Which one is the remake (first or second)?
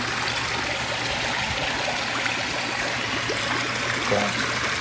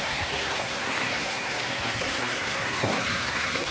second